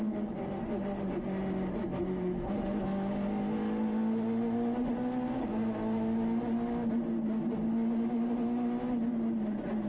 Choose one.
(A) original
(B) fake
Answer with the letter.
A